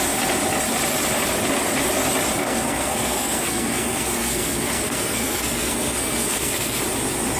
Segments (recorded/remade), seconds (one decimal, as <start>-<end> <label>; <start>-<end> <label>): 0.0-2.4 recorded; 2.4-6.8 remade; 6.8-7.4 recorded